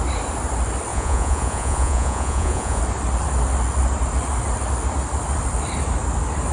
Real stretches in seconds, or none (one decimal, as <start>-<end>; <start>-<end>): 0.0-0.9; 2.8-6.5